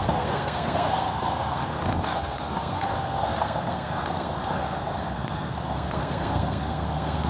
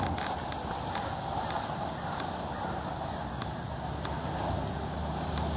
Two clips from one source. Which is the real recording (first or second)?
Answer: second